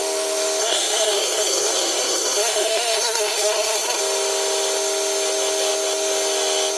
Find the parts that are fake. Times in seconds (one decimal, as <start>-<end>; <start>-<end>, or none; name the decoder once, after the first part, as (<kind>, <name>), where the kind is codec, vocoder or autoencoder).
0.6-4.0 (codec, SNAC)